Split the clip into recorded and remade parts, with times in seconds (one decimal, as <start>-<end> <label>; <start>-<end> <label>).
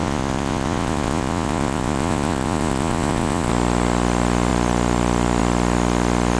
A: 0.0-3.5 remade; 3.5-6.4 recorded